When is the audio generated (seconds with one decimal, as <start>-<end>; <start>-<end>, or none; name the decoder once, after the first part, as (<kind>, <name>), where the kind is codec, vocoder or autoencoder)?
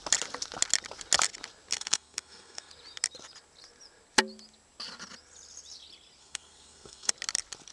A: 1.7-2.7 (codec, SNAC); 6.2-7.1